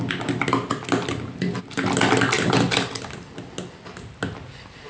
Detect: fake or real real